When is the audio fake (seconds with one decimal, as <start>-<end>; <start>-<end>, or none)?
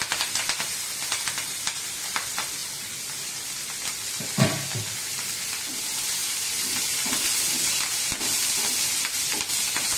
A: 0.0-2.2; 6.2-8.9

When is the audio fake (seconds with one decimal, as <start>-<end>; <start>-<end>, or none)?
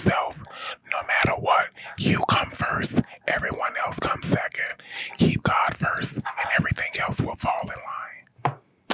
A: 0.8-2.6; 4.7-5.2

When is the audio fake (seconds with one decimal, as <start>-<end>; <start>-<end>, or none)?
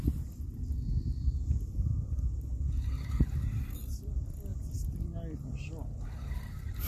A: 0.0-2.5; 3.6-6.9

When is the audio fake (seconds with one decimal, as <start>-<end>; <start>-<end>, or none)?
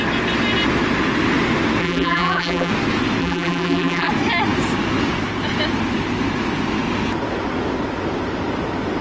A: 1.8-2.7; 3.2-4.1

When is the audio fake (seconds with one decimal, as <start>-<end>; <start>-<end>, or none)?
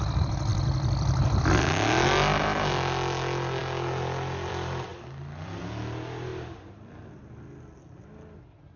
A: 0.5-1.4; 4.9-5.6; 6.3-7.1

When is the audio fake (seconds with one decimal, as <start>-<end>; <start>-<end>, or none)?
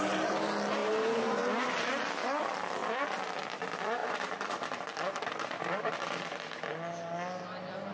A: 0.8-1.4; 2.8-3.4; 4.0-6.2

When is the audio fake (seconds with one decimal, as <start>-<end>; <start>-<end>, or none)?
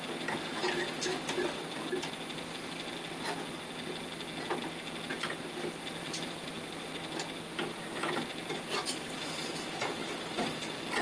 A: 6.0-6.9; 7.7-10.6